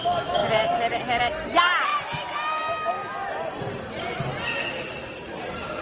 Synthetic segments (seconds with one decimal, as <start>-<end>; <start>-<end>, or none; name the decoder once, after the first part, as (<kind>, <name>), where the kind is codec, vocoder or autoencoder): none